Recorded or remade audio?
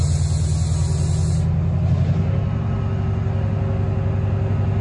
recorded